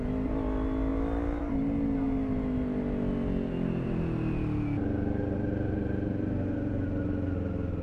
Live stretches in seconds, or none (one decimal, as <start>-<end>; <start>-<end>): 0.0-7.8